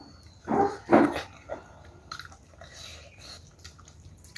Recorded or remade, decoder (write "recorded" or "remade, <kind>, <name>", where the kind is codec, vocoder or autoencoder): recorded